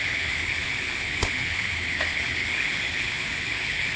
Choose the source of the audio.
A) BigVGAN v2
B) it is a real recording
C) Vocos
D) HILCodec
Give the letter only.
D